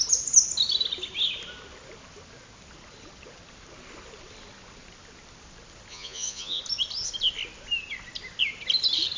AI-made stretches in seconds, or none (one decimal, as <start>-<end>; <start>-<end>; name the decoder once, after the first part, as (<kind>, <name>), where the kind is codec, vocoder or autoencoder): 5.9-6.6 (vocoder, Vocos)